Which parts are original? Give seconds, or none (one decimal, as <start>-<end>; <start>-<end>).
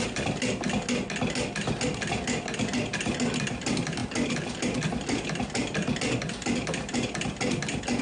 0.0-8.0